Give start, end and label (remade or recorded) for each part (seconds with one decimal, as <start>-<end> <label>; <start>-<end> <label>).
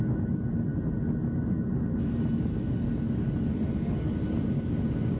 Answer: 0.0-5.2 recorded